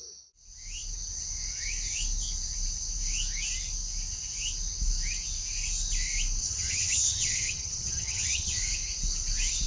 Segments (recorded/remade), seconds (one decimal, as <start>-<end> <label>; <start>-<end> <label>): 0.0-6.4 recorded; 6.4-8.6 remade; 8.6-9.7 recorded